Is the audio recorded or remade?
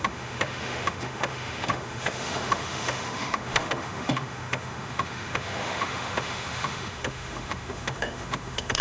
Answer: remade